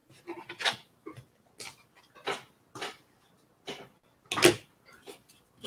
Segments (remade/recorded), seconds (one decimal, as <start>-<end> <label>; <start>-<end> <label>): 0.0-0.6 remade; 0.6-5.7 recorded